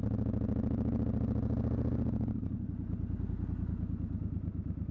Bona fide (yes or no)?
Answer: yes